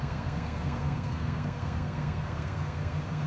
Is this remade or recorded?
remade